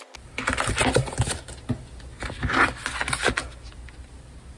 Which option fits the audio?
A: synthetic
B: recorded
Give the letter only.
B